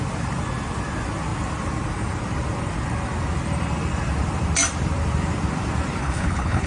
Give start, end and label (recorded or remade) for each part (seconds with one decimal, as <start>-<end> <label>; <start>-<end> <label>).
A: 0.0-6.0 recorded; 6.0-6.7 remade